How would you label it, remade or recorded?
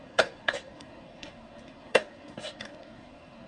remade